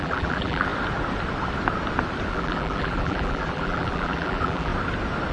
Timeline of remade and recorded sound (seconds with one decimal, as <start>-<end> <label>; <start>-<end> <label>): 0.0-0.7 remade; 0.7-2.3 recorded; 2.3-4.7 remade; 4.7-5.3 recorded